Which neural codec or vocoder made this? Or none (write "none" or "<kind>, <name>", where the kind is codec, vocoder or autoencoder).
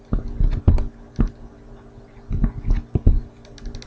none